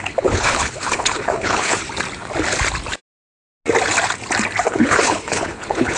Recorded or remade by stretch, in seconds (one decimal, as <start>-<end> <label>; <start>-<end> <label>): 0.0-1.8 remade; 1.8-4.6 recorded; 4.6-6.0 remade